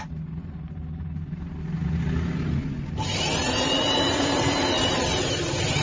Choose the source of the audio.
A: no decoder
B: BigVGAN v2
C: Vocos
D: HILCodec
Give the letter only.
A